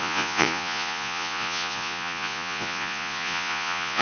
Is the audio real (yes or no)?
no